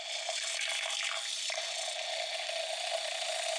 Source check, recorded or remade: recorded